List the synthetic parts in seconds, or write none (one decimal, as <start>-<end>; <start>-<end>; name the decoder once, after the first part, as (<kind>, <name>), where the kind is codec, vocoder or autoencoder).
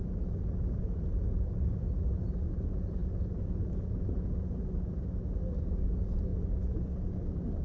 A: none